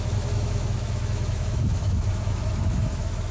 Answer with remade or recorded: remade